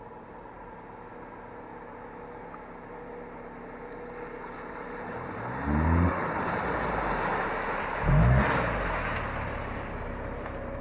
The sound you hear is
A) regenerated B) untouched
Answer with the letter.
B